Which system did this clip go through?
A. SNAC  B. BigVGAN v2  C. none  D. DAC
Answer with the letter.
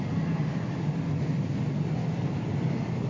C